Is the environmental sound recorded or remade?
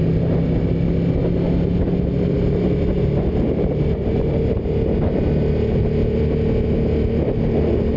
recorded